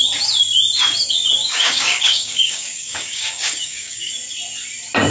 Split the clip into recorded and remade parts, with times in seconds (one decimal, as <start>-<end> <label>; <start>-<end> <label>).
0.0-1.4 recorded; 1.4-4.1 remade; 4.1-5.1 recorded